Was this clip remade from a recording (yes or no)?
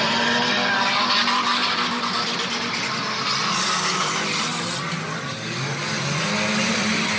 no